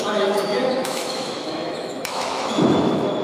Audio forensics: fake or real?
fake